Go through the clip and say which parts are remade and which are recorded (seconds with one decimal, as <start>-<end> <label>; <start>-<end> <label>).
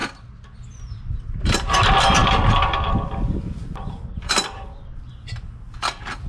0.0-6.3 recorded